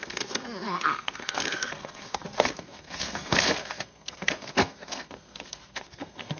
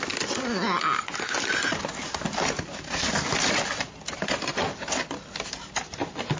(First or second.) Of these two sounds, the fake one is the first